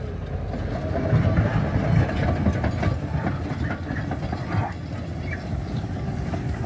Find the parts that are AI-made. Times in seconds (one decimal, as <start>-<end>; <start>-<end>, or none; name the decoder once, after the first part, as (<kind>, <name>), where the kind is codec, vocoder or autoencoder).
5.5-6.7 (codec, DAC)